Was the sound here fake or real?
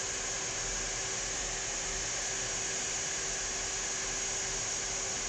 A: real